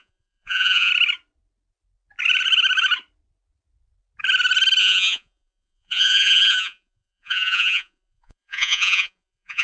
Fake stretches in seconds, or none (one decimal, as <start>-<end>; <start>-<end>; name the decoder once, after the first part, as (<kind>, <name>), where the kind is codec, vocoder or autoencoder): 0.0-0.9 (vocoder, Vocos); 4.8-9.6

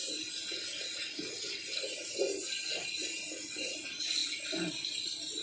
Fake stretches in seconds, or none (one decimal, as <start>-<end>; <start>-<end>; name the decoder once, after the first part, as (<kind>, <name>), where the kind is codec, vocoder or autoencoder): none

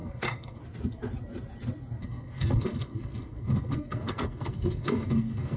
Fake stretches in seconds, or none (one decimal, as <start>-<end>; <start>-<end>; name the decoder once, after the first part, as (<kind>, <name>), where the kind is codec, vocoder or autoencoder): 0.0-0.6 (codec, SNAC); 2.0-5.6

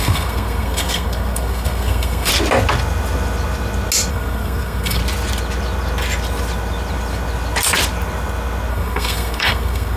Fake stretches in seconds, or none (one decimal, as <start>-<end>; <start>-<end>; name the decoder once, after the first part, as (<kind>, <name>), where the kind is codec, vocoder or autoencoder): 0.0-2.3 (codec, SNAC); 4.1-5.0; 8.7-10.0

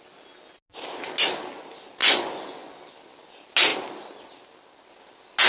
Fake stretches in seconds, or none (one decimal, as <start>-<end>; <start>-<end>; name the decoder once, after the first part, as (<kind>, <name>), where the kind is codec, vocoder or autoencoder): 2.0-2.7 (vocoder, Vocos)

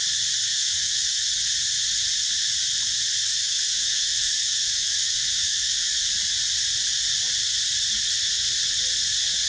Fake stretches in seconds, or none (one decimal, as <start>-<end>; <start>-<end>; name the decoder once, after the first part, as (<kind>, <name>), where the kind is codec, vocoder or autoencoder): 0.5-1.2 (autoencoder, DAC-VAE); 3.3-6.1

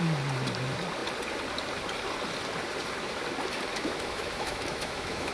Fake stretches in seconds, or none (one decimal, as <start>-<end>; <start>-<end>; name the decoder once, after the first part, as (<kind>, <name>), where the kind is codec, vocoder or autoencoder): 3.7-5.3 (autoencoder, DAC-VAE)